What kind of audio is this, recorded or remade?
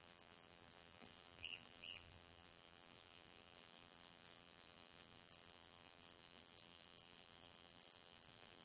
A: remade